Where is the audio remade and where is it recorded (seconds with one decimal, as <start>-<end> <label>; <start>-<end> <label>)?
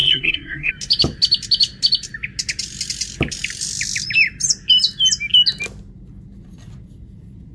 0.0-0.7 remade; 0.7-7.5 recorded